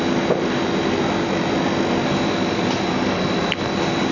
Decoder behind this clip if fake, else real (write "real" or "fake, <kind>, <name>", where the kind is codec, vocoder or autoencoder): real